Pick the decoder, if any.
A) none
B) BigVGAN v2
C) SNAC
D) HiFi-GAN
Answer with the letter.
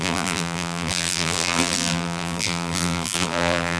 B